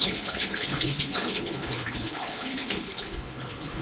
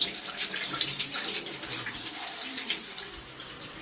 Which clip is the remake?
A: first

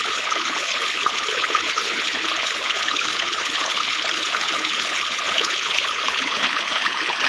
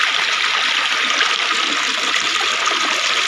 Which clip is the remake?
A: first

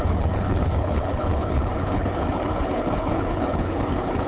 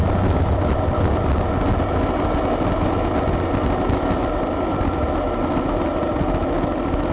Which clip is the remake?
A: first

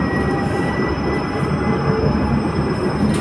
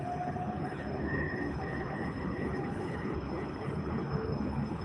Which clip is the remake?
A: second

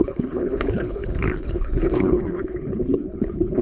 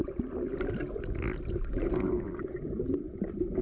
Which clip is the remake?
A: first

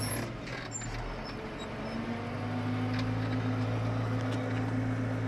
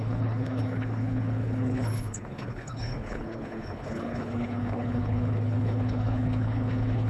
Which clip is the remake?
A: second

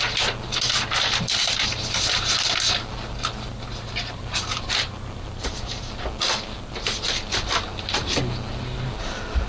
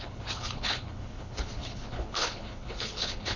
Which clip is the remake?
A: second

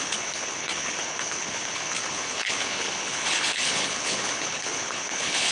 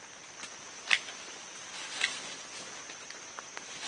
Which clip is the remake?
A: first